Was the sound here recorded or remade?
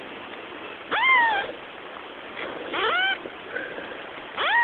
recorded